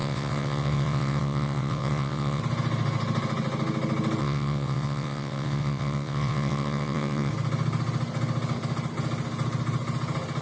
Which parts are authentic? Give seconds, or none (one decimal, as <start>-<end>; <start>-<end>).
2.4-4.2; 7.3-10.4